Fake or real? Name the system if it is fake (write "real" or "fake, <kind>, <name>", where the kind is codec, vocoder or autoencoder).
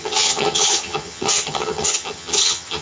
fake, vocoder, HiFi-GAN